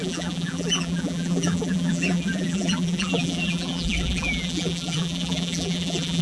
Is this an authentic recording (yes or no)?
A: no